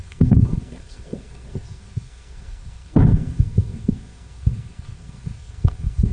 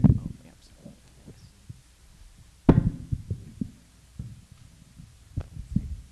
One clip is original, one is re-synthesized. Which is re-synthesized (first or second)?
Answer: first